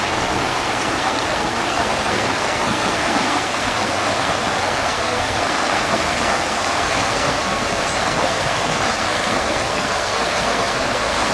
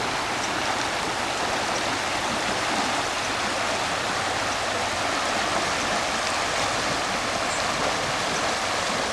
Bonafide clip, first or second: second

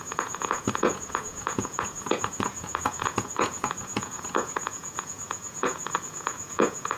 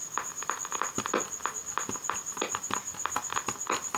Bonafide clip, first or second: second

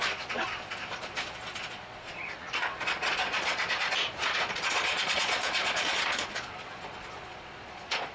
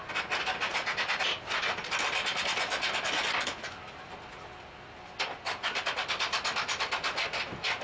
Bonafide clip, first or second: second